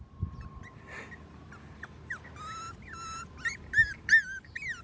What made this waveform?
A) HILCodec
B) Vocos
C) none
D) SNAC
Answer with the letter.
C